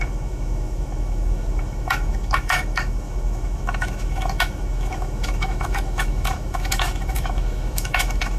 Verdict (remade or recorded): remade